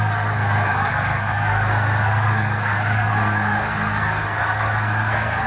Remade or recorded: remade